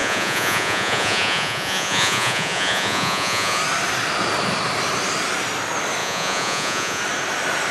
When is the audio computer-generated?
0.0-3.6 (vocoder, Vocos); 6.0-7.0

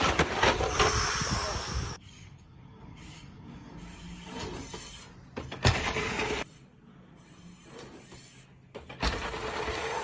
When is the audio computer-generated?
1.2-4.3 (codec, DAC)

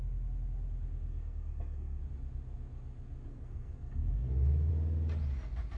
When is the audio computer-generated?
1.1-2.0 (codec, SNAC); 3.3-4.7

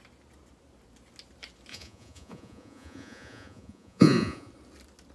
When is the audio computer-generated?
1.7-4.5 (vocoder, Vocos)